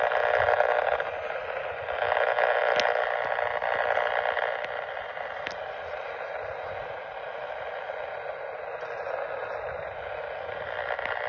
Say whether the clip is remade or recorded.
recorded